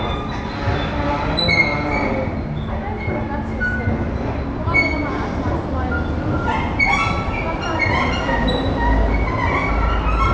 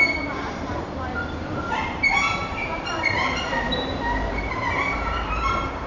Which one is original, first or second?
first